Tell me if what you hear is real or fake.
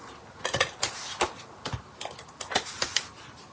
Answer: real